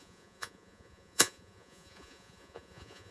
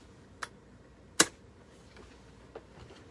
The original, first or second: second